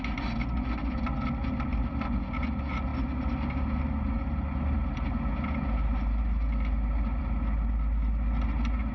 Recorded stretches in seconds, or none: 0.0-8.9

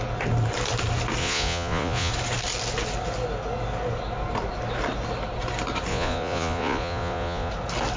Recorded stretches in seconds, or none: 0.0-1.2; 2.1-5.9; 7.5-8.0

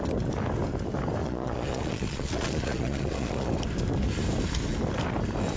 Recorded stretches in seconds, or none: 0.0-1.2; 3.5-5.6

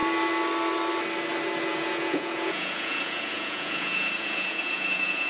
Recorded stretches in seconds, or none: 0.0-1.7

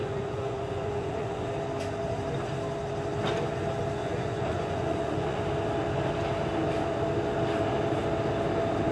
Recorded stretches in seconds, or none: 1.5-4.0; 5.4-8.9

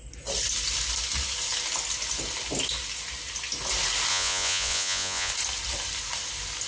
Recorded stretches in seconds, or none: 0.0-4.1; 5.3-6.7

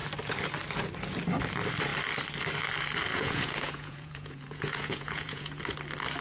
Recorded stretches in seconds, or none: 0.0-3.1; 5.6-6.2

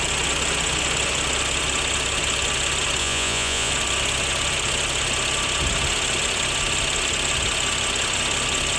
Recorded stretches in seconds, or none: 0.0-3.0; 3.7-8.8